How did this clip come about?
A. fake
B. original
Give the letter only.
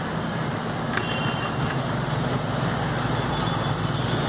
B